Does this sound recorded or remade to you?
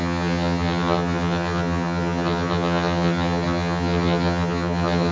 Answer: remade